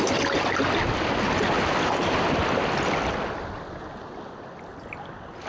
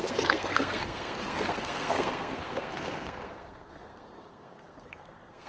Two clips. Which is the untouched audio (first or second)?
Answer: first